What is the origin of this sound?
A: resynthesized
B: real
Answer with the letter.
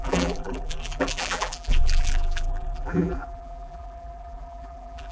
A